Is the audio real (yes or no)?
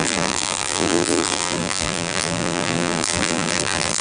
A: no